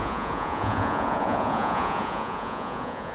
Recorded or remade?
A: remade